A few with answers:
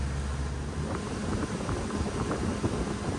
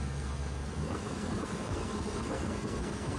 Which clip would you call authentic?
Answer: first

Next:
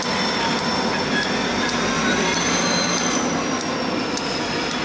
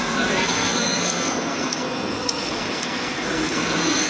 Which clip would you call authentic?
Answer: first